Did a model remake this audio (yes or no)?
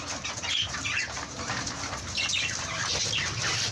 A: no